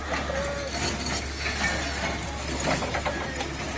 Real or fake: real